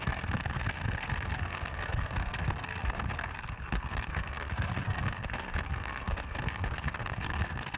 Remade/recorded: remade